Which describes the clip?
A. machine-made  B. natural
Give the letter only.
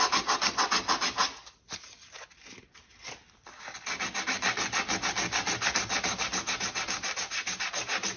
B